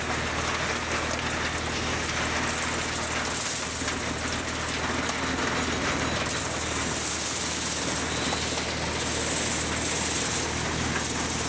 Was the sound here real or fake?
real